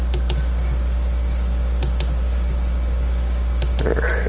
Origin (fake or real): real